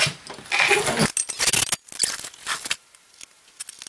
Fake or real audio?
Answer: real